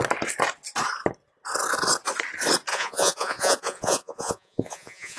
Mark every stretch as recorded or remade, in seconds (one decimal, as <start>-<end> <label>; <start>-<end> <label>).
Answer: 0.0-2.7 recorded; 2.7-5.2 remade